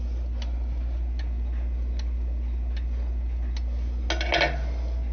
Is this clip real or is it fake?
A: real